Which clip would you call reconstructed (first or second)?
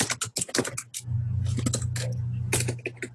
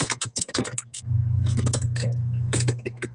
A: second